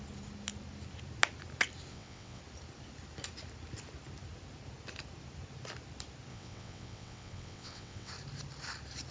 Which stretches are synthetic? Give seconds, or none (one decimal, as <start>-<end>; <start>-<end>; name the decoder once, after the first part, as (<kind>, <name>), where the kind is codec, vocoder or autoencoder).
1.9-2.4 (vocoder, WaveNeXt); 6.3-8.1